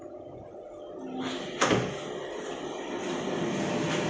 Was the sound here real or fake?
real